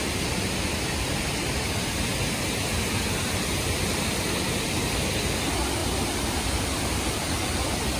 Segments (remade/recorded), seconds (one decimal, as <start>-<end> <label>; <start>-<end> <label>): 0.0-8.0 recorded